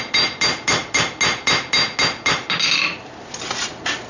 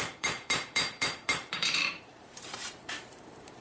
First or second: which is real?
first